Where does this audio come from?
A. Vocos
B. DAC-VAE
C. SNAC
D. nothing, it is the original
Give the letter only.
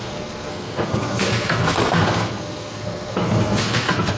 C